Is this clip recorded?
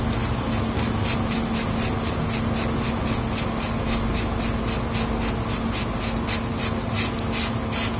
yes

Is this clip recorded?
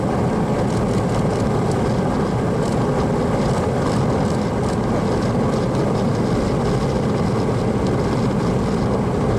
yes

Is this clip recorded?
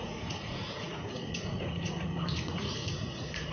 no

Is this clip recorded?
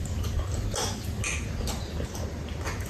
yes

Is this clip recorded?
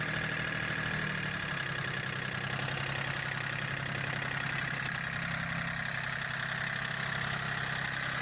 yes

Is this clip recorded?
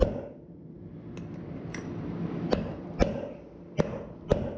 yes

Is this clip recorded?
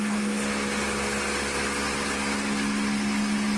yes